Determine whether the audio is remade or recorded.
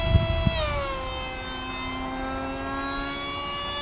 recorded